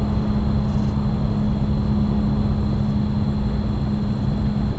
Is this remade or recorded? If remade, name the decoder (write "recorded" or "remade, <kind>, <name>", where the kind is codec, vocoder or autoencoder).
recorded